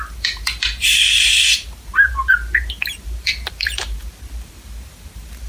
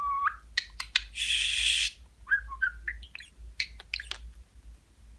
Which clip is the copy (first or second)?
first